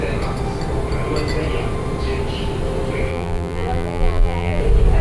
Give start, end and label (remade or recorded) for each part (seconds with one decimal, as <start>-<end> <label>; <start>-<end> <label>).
0.0-3.1 recorded; 3.1-4.6 remade; 4.6-5.0 recorded